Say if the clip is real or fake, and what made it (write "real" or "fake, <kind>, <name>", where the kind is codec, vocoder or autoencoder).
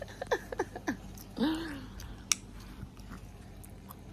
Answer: real